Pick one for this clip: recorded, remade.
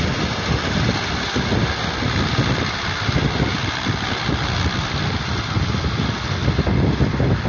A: recorded